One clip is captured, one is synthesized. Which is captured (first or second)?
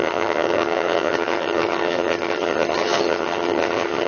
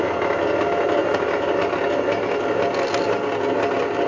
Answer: second